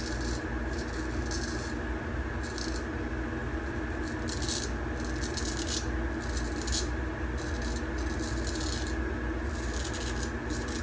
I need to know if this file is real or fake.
real